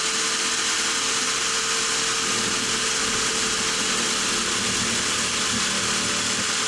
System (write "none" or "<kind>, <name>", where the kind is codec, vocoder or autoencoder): none